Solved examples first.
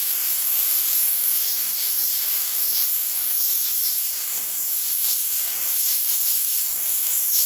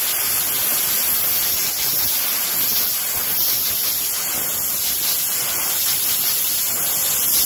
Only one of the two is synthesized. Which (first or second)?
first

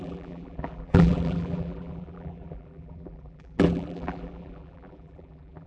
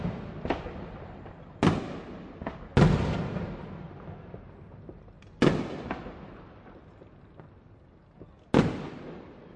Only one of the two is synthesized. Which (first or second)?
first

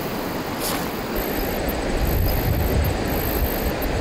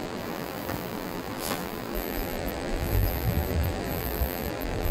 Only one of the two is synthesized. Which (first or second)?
second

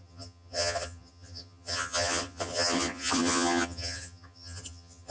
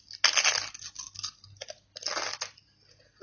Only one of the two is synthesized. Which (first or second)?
first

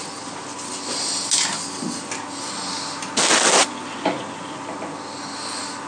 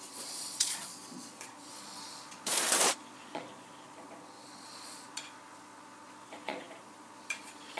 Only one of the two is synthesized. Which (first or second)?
second